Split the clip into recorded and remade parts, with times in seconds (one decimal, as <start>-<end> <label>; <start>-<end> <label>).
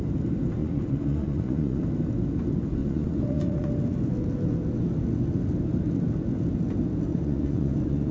0.0-0.6 recorded; 0.6-1.8 remade; 1.8-2.8 recorded; 2.8-3.7 remade; 3.7-7.1 recorded; 7.1-8.1 remade